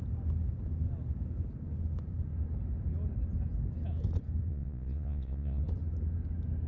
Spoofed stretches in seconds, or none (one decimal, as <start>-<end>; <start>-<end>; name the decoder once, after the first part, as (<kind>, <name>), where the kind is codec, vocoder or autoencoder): 4.5-5.6 (vocoder, Vocos)